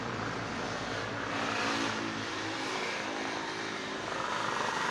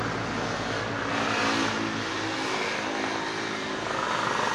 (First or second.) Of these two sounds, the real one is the second